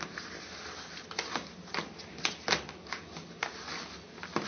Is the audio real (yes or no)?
yes